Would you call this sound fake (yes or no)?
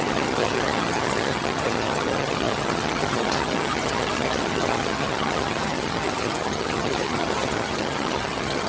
yes